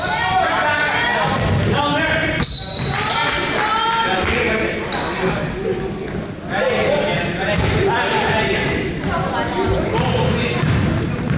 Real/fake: real